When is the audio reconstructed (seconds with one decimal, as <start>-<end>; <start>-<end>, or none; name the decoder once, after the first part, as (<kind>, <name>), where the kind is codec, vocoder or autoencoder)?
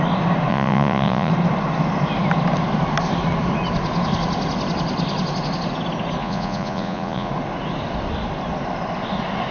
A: 0.5-1.3 (vocoder, Vocos); 6.2-7.3